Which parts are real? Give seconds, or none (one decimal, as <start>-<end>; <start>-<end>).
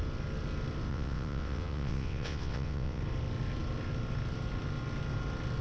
0.0-0.9; 3.0-5.6